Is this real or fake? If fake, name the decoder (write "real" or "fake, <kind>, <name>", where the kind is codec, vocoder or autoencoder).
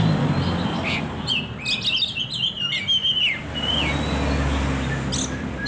real